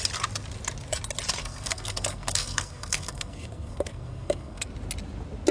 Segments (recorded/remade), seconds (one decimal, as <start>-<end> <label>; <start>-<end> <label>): 0.0-1.4 recorded; 1.4-4.7 remade; 4.7-5.5 recorded